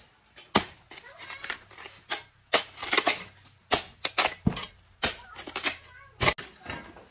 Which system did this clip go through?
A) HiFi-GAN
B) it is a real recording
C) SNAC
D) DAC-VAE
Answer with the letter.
B